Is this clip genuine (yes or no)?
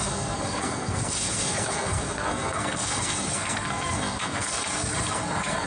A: no